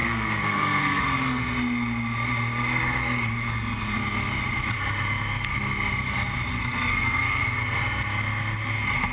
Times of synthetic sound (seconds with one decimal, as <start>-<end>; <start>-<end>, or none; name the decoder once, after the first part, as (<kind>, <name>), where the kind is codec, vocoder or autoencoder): 0.0-1.0 (codec, SNAC); 6.5-7.4